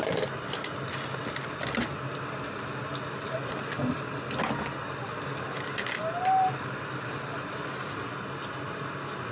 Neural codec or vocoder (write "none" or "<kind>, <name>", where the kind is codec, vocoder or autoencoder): none